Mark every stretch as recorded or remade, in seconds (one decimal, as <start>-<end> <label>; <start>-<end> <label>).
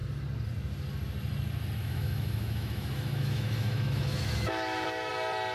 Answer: 0.0-1.8 recorded; 1.8-5.1 remade; 5.1-5.5 recorded